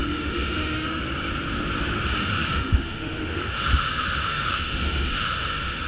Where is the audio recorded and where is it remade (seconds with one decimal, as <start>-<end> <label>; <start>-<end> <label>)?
0.0-1.0 remade; 1.0-2.2 recorded; 2.2-5.9 remade